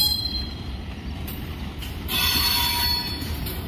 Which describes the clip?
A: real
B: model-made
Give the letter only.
B